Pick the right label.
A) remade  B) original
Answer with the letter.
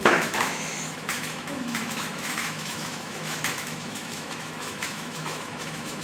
A